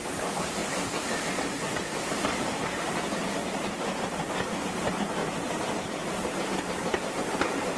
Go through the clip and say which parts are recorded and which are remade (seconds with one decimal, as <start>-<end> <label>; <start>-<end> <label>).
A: 0.0-0.6 remade; 0.6-1.8 recorded; 1.8-3.4 remade; 3.4-4.6 recorded; 4.6-5.2 remade; 5.2-6.4 recorded; 6.4-7.8 remade